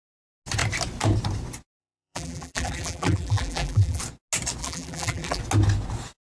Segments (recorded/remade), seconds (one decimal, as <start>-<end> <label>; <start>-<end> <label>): 0.0-1.8 recorded; 1.8-4.0 remade; 4.0-4.6 recorded; 4.6-5.4 remade; 5.4-6.2 recorded